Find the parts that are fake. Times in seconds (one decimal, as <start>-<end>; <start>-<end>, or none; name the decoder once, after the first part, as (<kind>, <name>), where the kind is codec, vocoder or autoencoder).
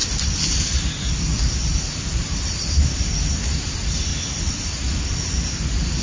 none